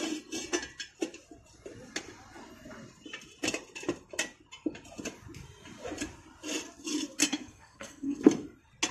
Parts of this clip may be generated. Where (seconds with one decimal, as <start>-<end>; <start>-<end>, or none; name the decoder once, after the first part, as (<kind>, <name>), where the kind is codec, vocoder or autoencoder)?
7.2-8.2 (codec, SNAC)

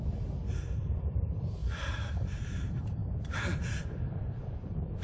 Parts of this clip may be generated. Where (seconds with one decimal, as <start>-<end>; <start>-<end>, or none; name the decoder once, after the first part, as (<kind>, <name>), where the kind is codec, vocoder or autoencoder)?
0.0-3.0 (vocoder, BigVGAN v2); 4.1-5.0

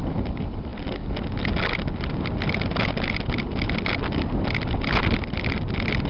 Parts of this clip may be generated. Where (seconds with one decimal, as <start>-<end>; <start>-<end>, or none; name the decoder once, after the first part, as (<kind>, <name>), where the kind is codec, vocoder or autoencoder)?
none

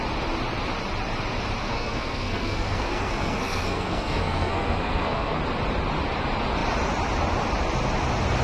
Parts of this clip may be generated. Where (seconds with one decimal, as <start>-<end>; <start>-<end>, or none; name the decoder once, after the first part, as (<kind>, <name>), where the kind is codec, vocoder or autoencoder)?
1.6-5.4 (codec, SNAC)

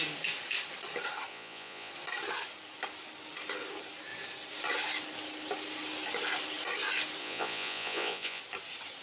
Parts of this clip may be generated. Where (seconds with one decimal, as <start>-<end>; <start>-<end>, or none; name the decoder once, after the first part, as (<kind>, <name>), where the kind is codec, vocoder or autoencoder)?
1.3-1.9 (vocoder, Vocos); 7.2-8.4

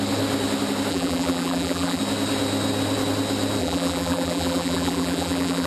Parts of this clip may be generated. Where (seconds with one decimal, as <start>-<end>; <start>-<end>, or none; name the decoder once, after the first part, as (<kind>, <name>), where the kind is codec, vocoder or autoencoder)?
0.9-2.0 (vocoder, BigVGAN v2); 3.6-5.7